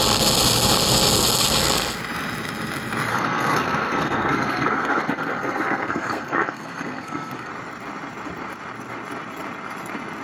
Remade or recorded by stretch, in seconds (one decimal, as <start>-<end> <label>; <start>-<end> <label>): 0.0-3.1 recorded; 3.1-7.5 remade; 7.5-10.2 recorded